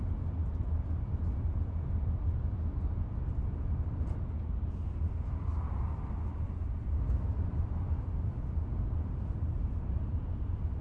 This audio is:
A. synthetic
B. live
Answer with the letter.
B